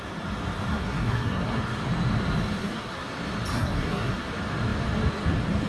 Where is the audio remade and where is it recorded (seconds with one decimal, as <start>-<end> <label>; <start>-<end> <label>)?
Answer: 0.0-0.7 recorded; 0.7-1.6 remade; 1.6-2.6 recorded; 2.6-3.1 remade; 3.1-3.5 recorded; 3.5-4.3 remade; 4.3-5.7 recorded